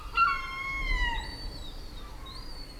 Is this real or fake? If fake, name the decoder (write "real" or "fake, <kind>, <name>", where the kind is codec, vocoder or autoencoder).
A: real